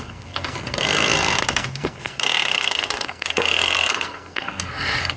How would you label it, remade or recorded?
remade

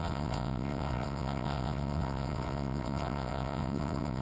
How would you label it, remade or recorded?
remade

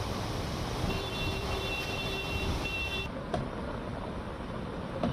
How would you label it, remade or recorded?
remade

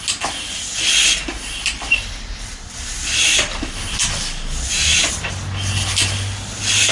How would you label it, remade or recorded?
recorded